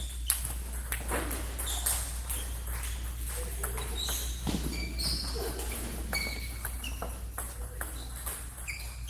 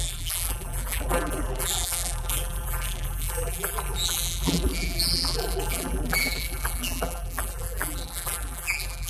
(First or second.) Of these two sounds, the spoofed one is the second